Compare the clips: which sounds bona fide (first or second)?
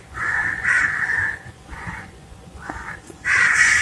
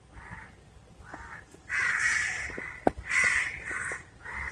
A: second